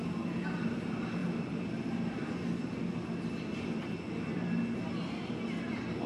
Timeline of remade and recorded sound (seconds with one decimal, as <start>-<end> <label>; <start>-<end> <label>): 0.0-6.1 recorded